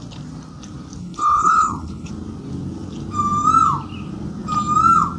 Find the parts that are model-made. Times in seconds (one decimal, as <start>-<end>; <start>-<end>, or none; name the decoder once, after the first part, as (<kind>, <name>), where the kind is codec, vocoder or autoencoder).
1.0-2.1 (codec, HILCodec)